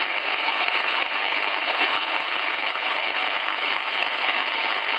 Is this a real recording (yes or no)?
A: no